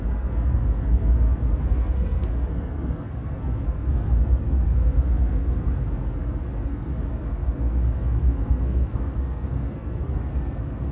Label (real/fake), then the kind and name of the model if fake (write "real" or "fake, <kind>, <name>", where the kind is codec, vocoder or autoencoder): fake, codec, SNAC